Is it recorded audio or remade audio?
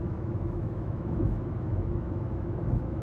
remade